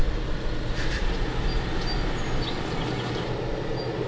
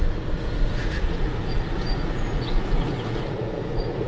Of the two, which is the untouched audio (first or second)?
first